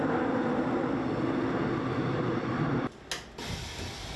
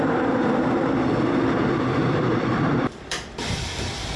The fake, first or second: second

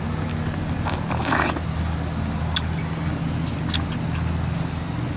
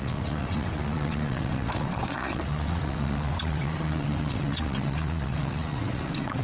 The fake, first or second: second